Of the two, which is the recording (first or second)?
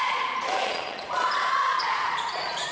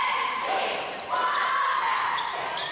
second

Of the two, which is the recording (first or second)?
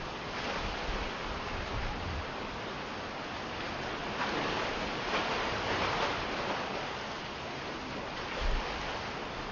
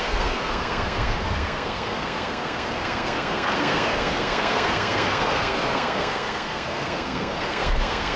first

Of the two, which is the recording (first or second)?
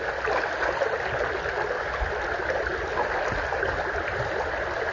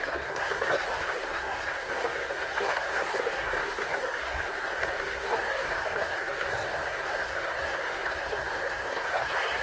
first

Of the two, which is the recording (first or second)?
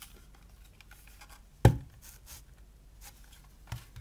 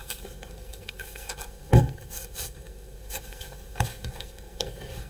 first